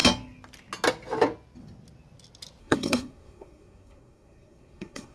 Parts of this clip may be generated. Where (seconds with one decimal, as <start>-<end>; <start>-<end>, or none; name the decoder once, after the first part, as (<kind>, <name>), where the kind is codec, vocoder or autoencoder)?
2.6-5.1 (codec, SNAC)